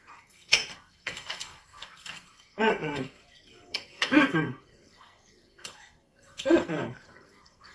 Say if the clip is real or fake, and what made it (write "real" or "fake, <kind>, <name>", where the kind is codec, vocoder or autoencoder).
fake, codec, SNAC